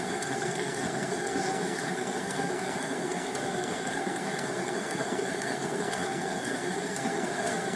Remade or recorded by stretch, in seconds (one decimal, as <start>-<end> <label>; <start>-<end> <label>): 0.0-7.8 remade